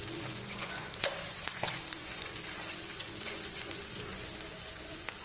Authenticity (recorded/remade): remade